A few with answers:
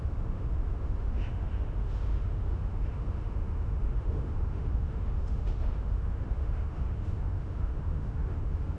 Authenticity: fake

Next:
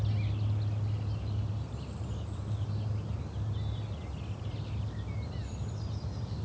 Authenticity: real